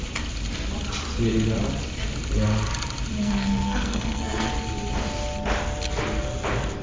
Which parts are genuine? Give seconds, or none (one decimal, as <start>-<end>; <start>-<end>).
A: 0.0-3.2; 4.5-6.8